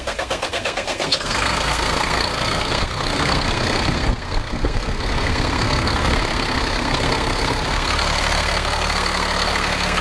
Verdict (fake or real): fake